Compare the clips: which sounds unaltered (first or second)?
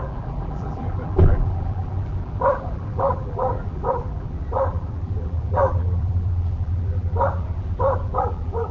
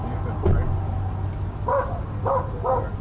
second